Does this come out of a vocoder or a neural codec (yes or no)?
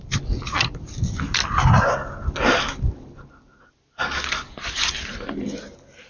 no